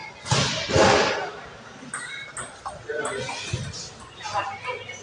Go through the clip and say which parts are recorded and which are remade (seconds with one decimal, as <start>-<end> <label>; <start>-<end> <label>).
0.0-5.0 recorded

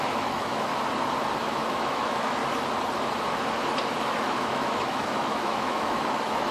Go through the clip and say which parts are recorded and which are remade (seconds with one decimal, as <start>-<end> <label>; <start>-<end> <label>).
0.0-0.7 remade; 0.7-1.5 recorded; 1.5-2.4 remade; 2.4-4.0 recorded; 4.0-6.5 remade

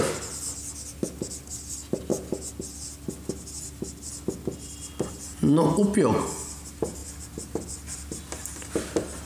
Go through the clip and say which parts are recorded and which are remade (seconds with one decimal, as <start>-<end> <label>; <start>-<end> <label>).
0.0-9.3 recorded